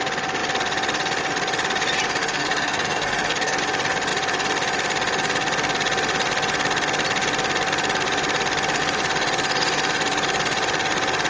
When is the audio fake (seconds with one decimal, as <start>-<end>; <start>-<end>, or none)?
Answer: 2.2-3.6